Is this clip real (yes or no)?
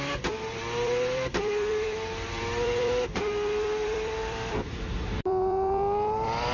no